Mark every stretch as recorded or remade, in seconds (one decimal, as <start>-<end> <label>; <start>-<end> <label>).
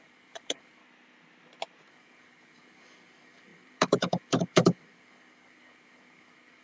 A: 0.0-0.8 remade; 0.8-1.9 recorded; 1.9-6.6 remade